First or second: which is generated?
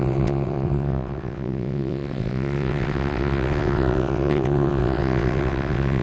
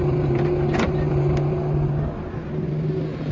first